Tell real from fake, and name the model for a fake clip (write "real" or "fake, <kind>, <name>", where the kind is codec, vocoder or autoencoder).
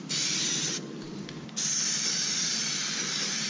real